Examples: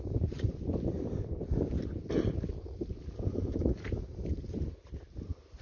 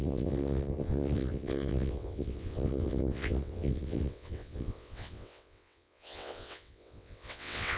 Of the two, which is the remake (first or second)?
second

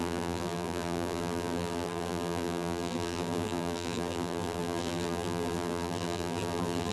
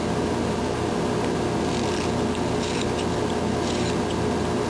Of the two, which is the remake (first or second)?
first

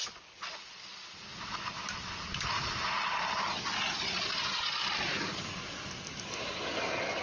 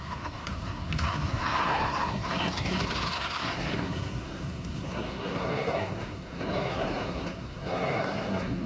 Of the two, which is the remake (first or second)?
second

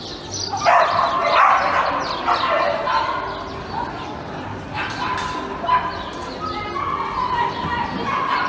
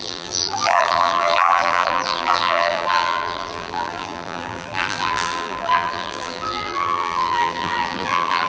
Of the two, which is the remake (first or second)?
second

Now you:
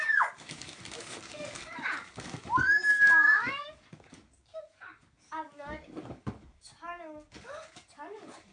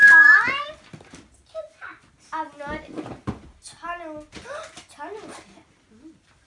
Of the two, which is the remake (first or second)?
first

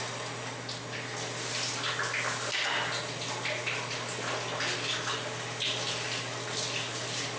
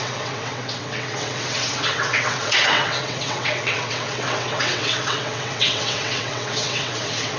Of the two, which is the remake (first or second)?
second